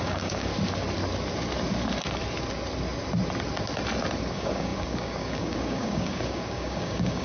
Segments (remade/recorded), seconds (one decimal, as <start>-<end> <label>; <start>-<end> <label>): 0.0-0.5 remade; 0.5-4.3 recorded; 4.3-7.2 remade